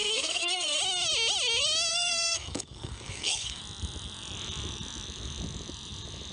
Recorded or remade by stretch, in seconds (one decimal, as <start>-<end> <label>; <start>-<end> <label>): 0.0-0.8 remade; 0.8-1.9 recorded; 1.9-3.6 remade; 3.6-6.3 recorded